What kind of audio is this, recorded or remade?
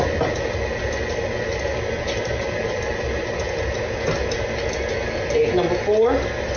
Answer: recorded